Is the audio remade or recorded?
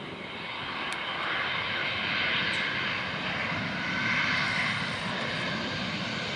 recorded